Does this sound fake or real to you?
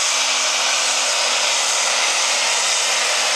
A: real